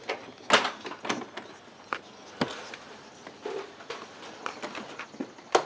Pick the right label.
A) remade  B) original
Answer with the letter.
B